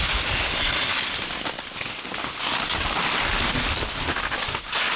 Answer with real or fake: real